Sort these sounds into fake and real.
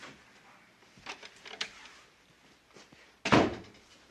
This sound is real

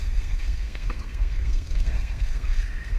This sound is fake